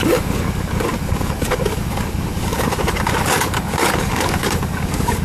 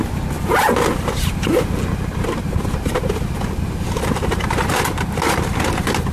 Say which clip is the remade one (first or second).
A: first